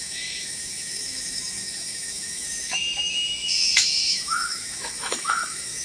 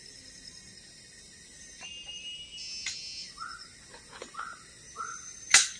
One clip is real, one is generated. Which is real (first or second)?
second